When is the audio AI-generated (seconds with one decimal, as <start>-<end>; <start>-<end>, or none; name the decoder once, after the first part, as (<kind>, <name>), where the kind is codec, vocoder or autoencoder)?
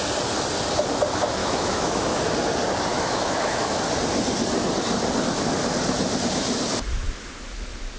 1.4-2.2 (autoencoder, DAC-VAE); 2.9-3.8